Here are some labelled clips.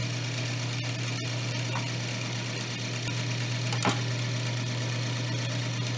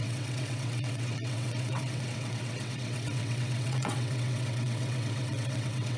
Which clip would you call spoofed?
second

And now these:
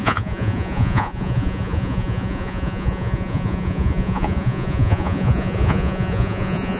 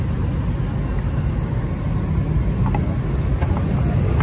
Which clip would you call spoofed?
first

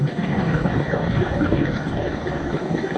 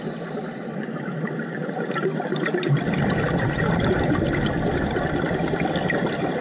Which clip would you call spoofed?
first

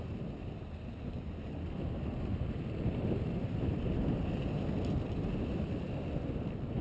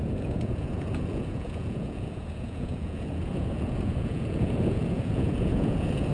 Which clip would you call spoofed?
second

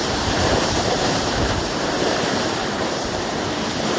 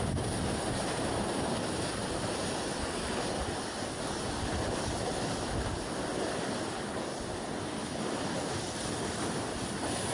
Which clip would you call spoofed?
first